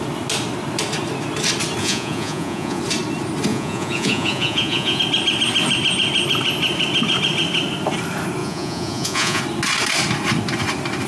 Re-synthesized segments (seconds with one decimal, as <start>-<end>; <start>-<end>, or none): 1.8-2.8; 3.5-5.0; 8.4-9.4